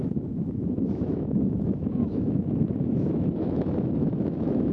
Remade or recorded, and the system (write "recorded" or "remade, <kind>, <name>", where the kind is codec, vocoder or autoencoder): remade, autoencoder, DAC-VAE